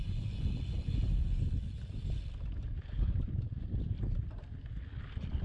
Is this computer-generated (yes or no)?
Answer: no